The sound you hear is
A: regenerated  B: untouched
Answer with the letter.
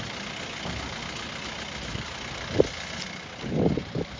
B